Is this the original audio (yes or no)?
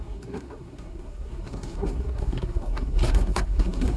no